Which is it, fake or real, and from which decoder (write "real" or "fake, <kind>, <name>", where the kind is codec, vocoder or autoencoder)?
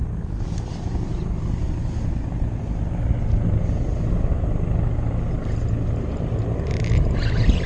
real